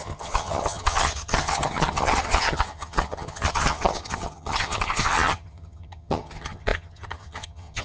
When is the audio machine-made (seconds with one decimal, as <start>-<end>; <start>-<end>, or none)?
0.0-7.8